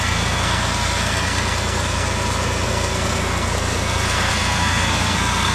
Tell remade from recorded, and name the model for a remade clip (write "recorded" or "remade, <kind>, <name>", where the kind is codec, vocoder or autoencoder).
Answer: remade, codec, SNAC